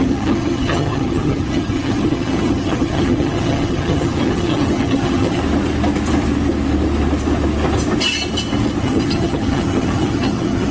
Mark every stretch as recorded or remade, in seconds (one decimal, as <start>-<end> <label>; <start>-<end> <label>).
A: 0.0-5.4 remade; 5.4-8.8 recorded; 8.8-10.7 remade